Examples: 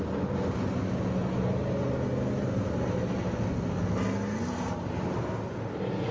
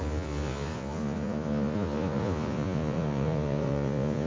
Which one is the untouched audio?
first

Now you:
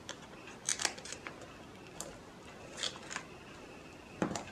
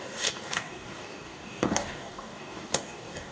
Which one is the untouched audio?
first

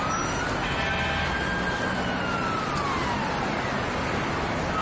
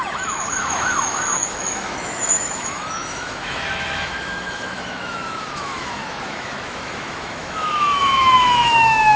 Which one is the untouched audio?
first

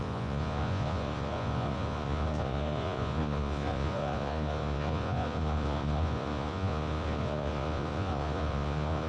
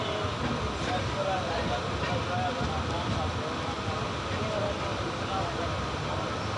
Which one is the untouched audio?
second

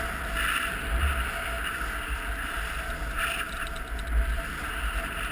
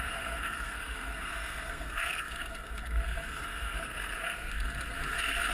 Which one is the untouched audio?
first